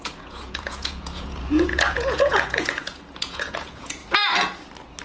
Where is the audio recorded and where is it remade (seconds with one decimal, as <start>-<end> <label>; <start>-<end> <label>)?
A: 0.0-4.0 remade; 4.0-5.0 recorded